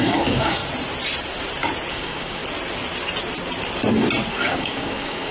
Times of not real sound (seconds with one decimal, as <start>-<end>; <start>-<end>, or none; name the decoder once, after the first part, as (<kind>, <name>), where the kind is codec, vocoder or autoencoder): 0.0-0.6 (codec, DAC); 1.9-2.4; 4.3-5.3